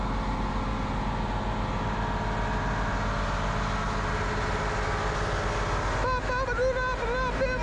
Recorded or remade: recorded